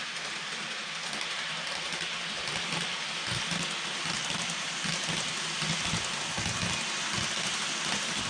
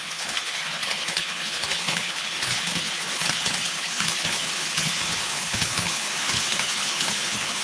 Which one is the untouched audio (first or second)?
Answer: first